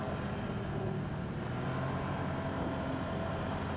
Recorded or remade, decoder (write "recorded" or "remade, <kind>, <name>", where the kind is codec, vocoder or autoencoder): recorded